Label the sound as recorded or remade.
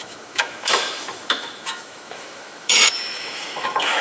remade